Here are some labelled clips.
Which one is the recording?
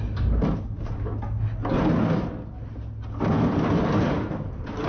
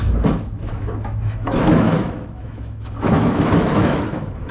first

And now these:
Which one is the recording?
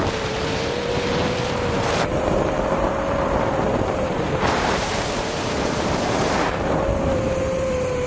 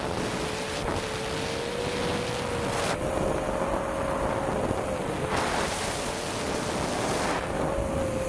second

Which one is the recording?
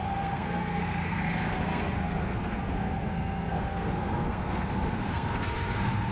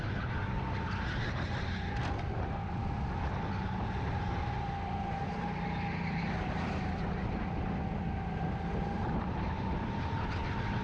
second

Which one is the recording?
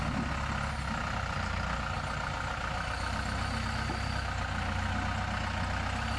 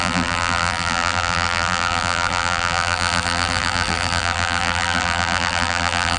first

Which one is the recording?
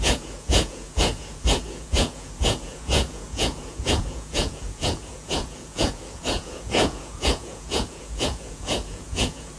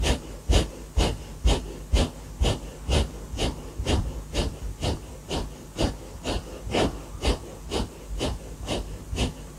second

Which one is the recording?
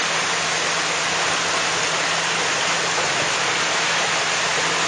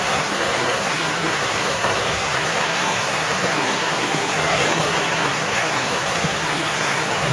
first